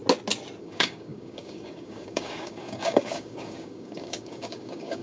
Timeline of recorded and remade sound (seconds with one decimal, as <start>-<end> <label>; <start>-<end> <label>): 0.0-0.6 recorded; 0.6-5.0 remade